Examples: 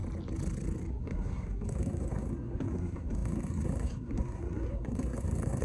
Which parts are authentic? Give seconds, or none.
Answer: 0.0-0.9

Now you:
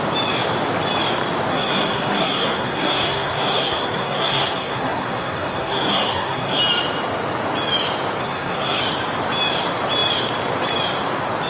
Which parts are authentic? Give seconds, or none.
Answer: 0.0-1.5; 6.6-8.2; 8.8-11.5